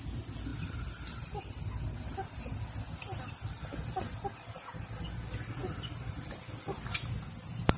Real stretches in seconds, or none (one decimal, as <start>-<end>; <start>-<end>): 0.0-0.5; 2.6-3.1; 4.9-5.6; 6.4-7.8